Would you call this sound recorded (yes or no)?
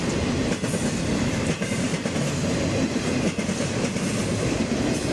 yes